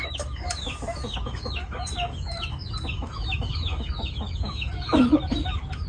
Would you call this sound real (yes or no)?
no